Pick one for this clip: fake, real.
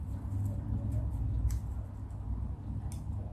real